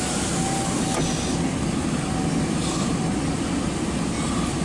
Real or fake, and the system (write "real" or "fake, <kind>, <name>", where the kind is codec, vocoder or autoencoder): real